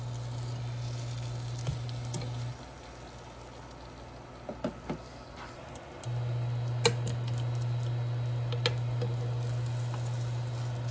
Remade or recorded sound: recorded